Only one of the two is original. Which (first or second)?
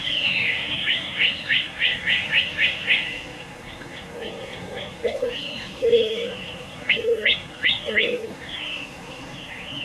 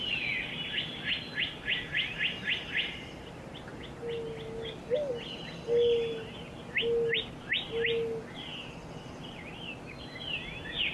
second